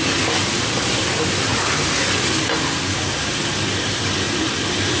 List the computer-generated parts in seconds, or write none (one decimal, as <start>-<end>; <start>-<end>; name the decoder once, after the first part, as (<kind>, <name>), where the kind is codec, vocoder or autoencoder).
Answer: none